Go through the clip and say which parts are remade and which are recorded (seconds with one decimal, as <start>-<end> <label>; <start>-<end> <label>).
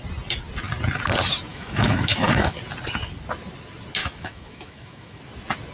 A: 0.0-1.5 recorded; 1.5-2.6 remade; 2.6-4.0 recorded; 4.0-5.2 remade; 5.2-5.7 recorded